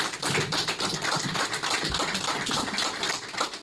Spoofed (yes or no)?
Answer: no